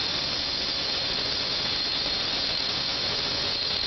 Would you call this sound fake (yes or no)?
yes